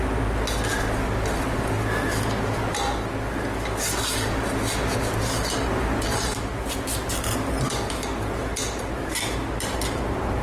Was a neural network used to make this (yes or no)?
no